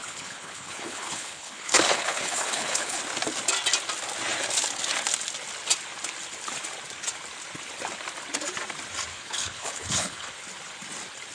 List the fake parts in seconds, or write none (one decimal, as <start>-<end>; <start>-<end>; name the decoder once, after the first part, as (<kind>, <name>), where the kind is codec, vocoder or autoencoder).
0.0-3.0 (codec, HILCodec); 9.1-10.3